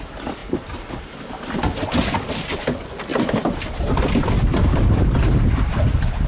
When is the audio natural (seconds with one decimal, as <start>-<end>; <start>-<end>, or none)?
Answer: 0.0-6.3